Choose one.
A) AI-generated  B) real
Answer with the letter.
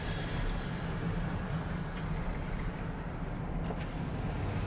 B